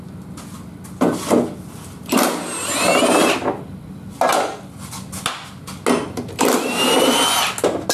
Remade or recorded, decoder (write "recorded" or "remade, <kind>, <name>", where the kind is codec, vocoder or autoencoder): recorded